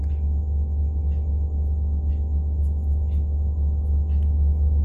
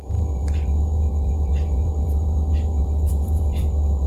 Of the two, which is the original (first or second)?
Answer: first